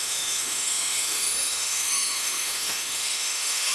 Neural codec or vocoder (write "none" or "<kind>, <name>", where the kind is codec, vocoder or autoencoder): autoencoder, DAC-VAE